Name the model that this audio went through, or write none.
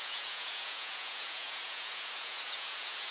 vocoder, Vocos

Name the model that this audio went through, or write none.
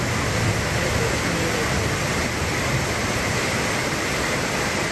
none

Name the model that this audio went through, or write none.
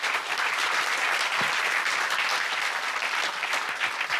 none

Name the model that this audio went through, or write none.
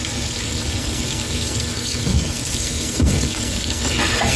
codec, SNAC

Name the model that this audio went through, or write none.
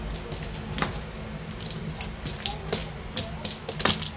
none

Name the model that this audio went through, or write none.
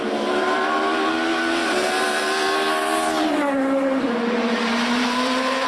vocoder, BigVGAN v2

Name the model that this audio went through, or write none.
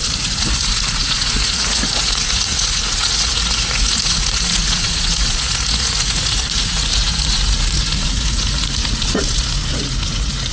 vocoder, Vocos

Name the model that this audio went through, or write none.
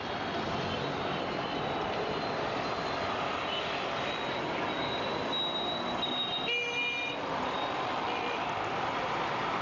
none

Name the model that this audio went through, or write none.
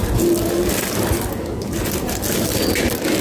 none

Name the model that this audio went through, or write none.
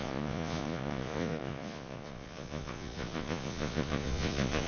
vocoder, Vocos